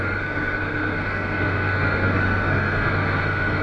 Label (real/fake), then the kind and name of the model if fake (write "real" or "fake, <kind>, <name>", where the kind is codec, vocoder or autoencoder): fake, codec, SNAC